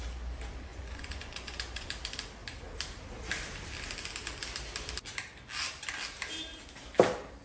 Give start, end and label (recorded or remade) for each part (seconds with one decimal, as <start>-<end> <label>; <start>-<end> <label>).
0.0-0.7 recorded; 0.7-1.9 remade; 1.9-7.4 recorded